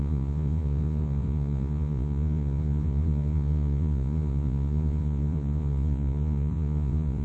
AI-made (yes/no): yes